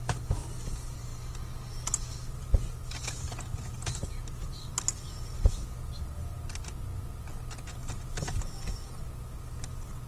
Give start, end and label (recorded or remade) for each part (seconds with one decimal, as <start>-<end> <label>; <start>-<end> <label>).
0.0-10.1 recorded